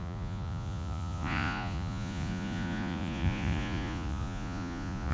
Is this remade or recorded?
remade